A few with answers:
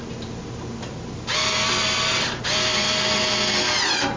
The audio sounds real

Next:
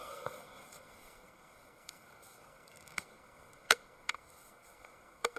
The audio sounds fake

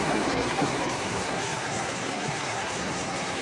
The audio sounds fake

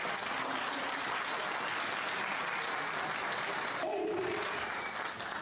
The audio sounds real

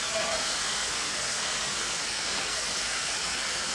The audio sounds fake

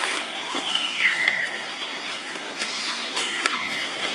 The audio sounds fake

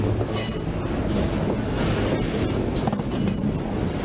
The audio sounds real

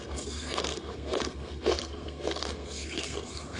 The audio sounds fake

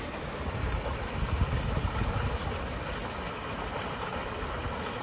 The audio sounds real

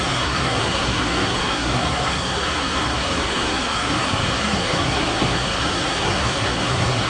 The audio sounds fake